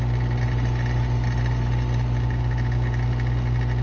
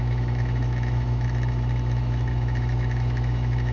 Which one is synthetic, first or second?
second